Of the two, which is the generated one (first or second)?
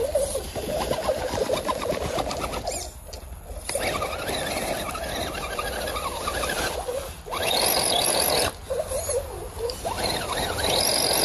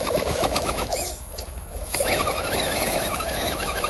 second